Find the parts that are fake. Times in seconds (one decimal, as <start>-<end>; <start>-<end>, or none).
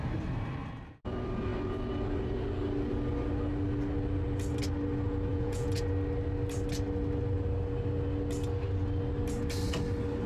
5.3-5.8